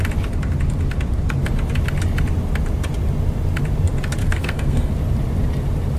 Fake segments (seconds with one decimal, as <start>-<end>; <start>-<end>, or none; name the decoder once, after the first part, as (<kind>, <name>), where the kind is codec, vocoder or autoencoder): 4.2-4.9 (codec, SNAC)